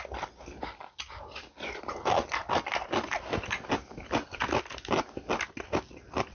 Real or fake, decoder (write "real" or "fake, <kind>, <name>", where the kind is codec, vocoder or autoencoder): real